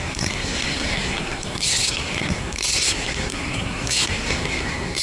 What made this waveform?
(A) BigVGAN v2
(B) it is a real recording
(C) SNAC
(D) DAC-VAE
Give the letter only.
C